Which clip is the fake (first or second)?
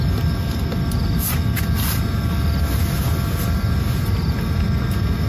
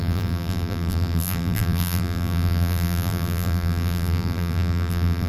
second